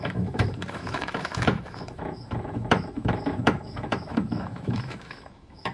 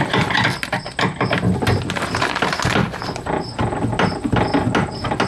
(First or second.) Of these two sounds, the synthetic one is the first